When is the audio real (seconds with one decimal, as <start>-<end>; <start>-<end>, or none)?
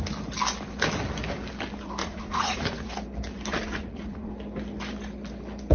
0.0-2.0; 2.9-3.5; 4.3-5.7